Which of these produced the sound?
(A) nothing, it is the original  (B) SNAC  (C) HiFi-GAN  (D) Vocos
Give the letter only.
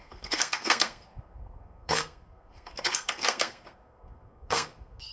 B